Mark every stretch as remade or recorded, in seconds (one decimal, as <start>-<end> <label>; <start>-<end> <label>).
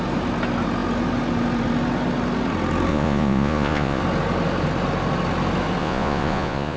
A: 0.0-2.9 recorded; 2.9-4.0 remade; 4.0-5.8 recorded; 5.8-6.8 remade